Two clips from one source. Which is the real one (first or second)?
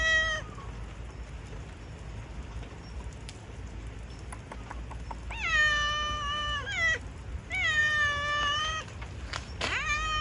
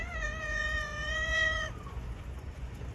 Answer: first